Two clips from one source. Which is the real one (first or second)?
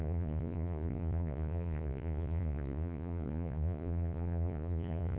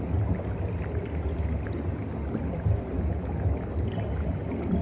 second